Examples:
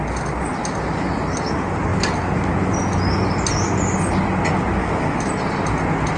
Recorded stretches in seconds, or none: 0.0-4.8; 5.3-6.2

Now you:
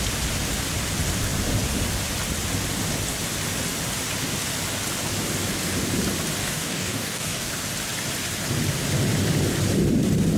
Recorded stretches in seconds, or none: 0.0-6.4; 7.5-10.4

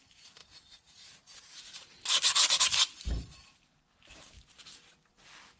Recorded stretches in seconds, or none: 0.0-5.6

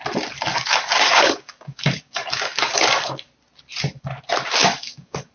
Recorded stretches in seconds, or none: 0.0-0.5; 3.3-4.6

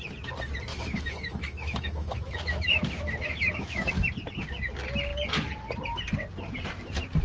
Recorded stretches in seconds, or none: 0.0-0.7; 3.9-7.2

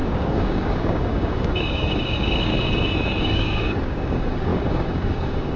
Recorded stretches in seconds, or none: 2.5-3.2

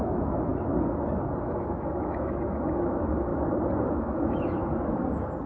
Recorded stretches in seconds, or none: 0.5-1.4; 3.3-3.9; 4.6-5.5

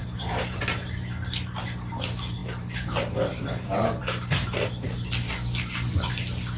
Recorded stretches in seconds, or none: 0.6-2.4; 4.0-6.6